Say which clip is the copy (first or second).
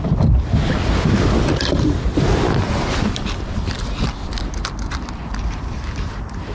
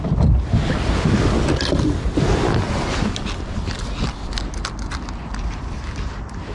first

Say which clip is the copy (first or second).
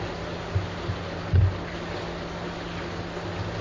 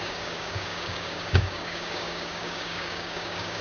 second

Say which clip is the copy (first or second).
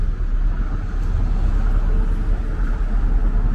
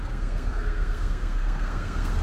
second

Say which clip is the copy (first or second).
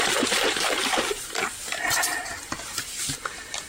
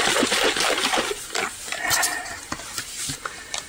first